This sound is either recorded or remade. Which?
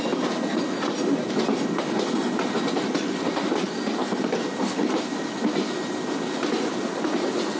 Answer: recorded